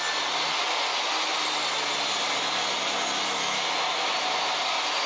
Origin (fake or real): real